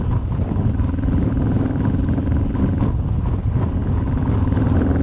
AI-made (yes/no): no